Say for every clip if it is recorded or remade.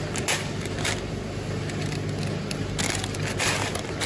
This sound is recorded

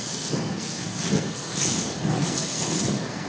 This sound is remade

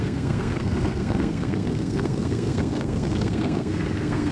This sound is remade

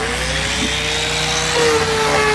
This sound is recorded